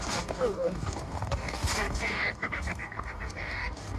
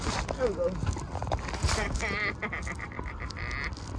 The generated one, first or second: first